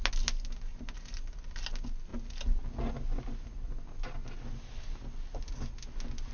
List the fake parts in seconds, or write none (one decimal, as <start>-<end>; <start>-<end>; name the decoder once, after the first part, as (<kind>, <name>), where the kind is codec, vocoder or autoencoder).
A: none